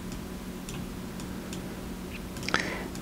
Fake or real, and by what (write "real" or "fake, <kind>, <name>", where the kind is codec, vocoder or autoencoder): real